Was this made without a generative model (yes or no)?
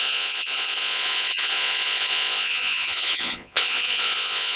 no